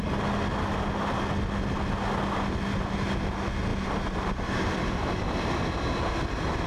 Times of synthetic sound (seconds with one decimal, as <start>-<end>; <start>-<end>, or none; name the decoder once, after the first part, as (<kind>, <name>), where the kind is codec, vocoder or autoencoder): none